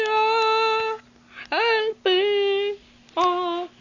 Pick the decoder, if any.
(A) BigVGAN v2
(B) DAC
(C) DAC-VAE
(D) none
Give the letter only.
D